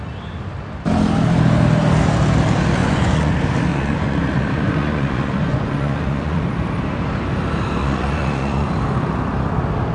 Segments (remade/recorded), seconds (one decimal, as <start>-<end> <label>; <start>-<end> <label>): 0.0-2.8 recorded; 2.8-3.3 remade; 3.3-3.7 recorded; 3.7-6.4 remade; 6.4-7.8 recorded; 7.8-8.7 remade; 8.7-9.9 recorded